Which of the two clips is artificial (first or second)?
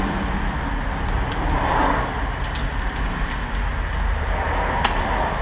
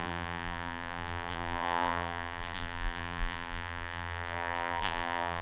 second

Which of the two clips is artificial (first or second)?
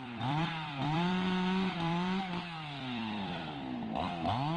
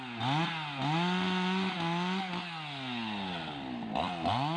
first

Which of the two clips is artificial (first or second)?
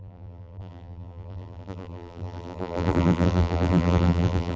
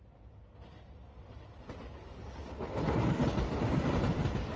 first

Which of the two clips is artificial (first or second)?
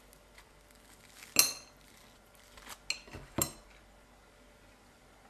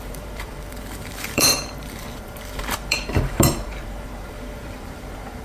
second